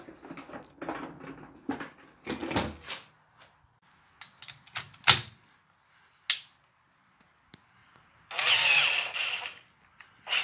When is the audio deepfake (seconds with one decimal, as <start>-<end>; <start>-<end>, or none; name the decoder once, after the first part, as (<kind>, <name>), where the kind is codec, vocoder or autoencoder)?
none